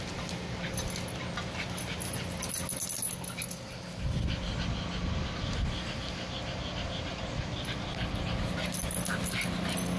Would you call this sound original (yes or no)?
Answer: yes